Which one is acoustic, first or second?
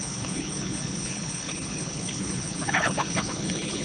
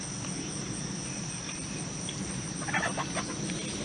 second